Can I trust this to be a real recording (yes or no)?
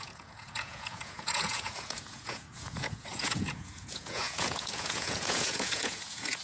no